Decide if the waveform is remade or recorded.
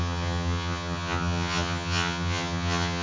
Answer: remade